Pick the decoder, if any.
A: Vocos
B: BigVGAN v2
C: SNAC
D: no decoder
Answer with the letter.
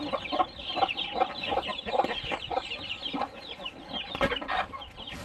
B